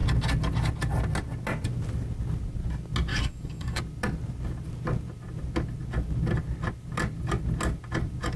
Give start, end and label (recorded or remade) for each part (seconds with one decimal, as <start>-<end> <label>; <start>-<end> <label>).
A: 0.0-3.1 recorded; 3.1-3.8 remade; 3.8-8.4 recorded